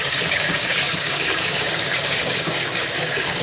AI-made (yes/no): yes